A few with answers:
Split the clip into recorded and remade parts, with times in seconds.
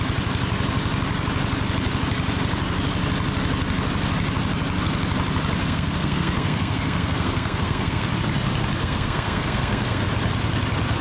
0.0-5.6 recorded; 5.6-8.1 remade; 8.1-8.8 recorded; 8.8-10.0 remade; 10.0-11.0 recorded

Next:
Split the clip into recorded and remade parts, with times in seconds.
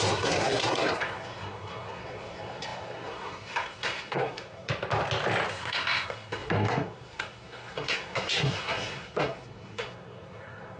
0.0-4.7 remade; 4.7-5.5 recorded; 5.5-10.8 remade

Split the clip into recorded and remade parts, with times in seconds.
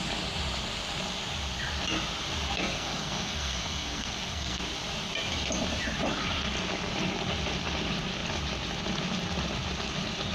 0.0-2.6 recorded; 2.6-4.6 remade; 4.6-10.3 recorded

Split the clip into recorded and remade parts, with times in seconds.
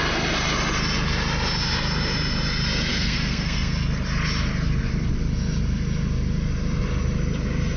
0.0-2.9 recorded; 2.9-3.7 remade; 3.7-7.8 recorded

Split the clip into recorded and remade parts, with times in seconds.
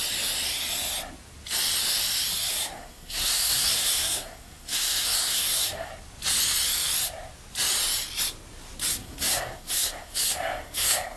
0.0-2.5 recorded; 2.5-5.9 remade; 5.9-8.9 recorded; 8.9-11.2 remade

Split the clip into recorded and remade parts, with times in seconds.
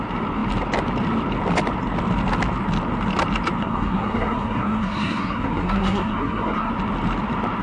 0.0-3.6 recorded; 3.6-6.7 remade; 6.7-7.6 recorded